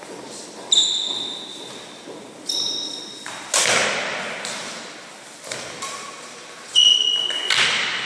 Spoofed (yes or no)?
no